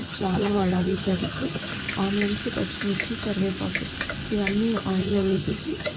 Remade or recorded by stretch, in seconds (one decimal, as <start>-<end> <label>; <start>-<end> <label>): 0.0-1.7 remade; 1.7-5.0 recorded; 5.0-6.0 remade